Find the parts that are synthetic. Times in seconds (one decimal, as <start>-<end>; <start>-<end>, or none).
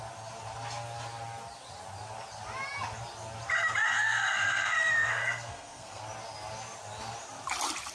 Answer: 3.8-6.0